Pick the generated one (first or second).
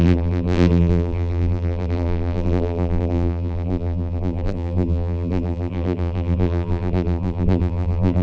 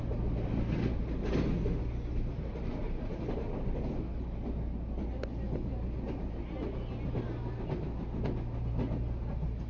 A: first